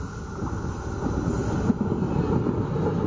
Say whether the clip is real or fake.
real